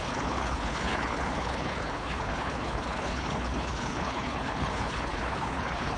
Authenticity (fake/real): fake